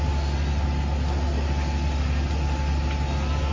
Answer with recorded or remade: recorded